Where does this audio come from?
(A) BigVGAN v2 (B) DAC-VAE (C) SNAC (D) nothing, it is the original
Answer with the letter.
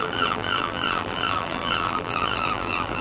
A